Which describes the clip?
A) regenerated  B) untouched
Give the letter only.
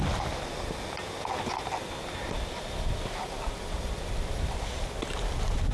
B